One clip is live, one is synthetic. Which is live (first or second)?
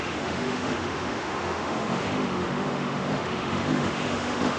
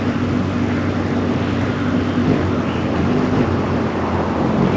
second